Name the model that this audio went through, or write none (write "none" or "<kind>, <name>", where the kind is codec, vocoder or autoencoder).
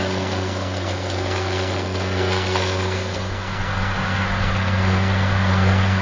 codec, SNAC